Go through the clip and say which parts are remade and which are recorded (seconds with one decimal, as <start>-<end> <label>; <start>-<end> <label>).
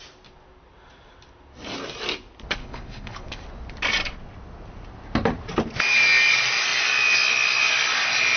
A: 0.0-2.6 recorded; 2.6-3.3 remade; 3.3-8.4 recorded